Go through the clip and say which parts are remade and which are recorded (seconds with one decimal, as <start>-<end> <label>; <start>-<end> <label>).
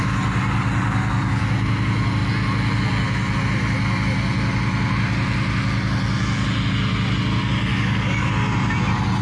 0.0-7.7 recorded; 7.7-8.3 remade; 8.3-9.2 recorded